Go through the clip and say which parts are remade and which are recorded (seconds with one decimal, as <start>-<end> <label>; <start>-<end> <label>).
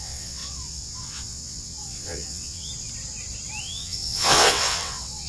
0.0-2.7 remade; 2.7-3.6 recorded; 3.6-5.3 remade